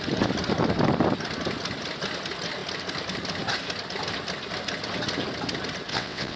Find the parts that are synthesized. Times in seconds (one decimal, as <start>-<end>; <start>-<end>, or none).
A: 5.9-6.4